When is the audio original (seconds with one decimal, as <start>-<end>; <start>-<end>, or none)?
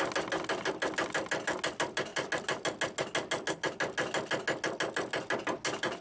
0.0-6.0